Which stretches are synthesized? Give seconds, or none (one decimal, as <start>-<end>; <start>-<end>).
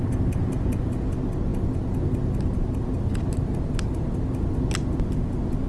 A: none